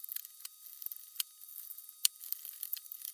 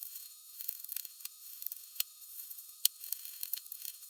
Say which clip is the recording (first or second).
first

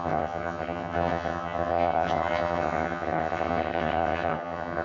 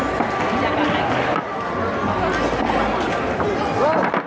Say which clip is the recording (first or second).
second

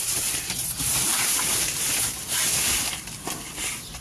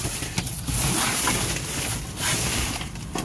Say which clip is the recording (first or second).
second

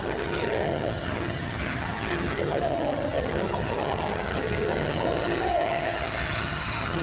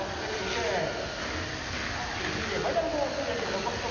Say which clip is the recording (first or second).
second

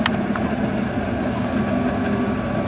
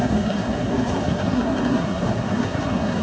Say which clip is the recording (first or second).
first